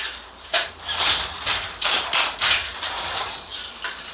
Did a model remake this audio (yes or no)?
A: yes